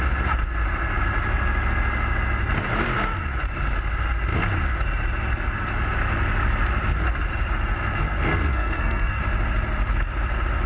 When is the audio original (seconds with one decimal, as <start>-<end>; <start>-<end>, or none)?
0.0-8.0; 9.2-10.7

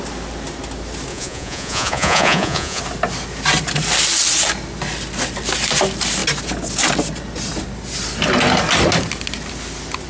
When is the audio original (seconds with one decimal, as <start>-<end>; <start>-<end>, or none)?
0.0-1.1; 2.8-10.1